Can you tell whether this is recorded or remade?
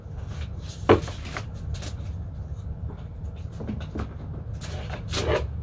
recorded